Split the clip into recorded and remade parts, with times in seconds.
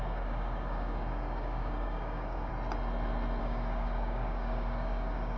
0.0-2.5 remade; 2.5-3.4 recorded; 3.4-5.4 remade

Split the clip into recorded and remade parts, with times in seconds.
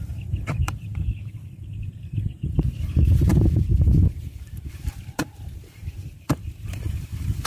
0.0-7.5 remade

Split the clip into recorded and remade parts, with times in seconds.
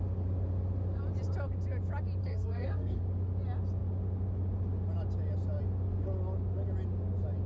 0.0-2.2 recorded; 2.2-3.0 remade; 3.0-7.5 recorded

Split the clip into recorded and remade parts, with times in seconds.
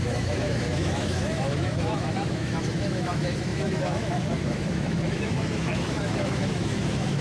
0.0-7.2 remade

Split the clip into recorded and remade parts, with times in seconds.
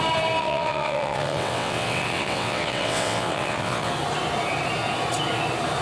0.0-0.4 recorded; 0.4-3.9 remade; 3.9-5.8 recorded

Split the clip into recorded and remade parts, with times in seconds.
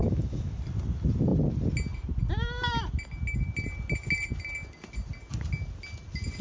0.0-0.6 remade; 0.6-6.4 recorded